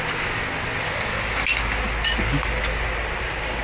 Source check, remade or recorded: recorded